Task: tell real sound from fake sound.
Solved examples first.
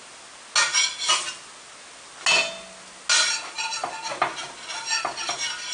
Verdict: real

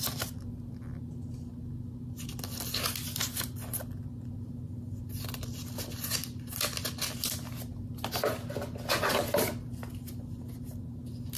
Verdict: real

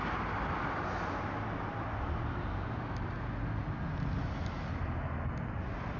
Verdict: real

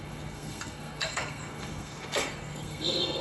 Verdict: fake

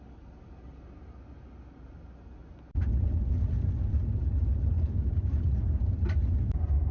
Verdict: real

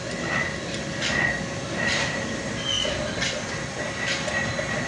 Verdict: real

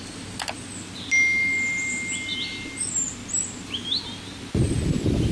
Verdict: real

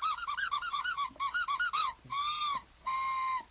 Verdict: real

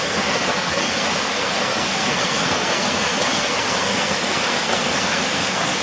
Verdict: fake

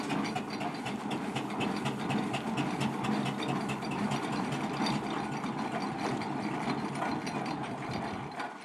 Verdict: real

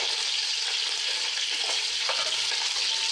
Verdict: real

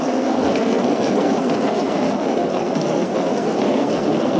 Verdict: fake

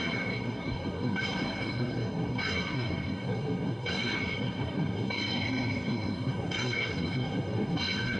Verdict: fake